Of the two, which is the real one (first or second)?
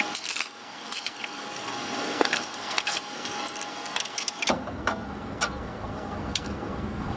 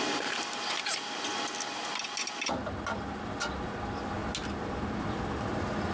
second